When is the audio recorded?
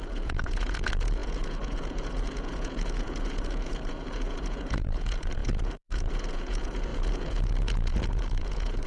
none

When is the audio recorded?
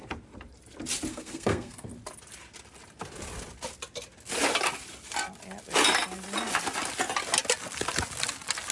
0.0-1.1; 1.9-8.7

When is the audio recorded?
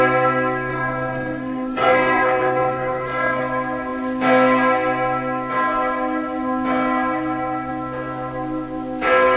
0.0-0.7; 3.4-9.4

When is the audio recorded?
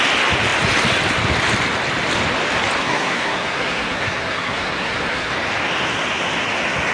0.0-2.8; 5.3-6.9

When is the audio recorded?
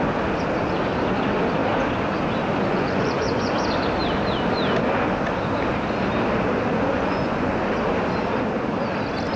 0.0-2.7; 3.5-6.7; 7.5-9.4